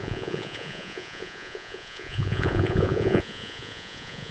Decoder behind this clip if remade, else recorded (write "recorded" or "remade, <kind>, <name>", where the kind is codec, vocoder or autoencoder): remade, vocoder, Vocos